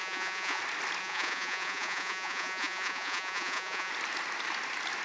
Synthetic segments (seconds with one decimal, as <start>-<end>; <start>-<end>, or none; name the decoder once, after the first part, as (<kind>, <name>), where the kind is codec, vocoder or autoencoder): 0.0-0.6 (vocoder, Vocos); 1.0-3.9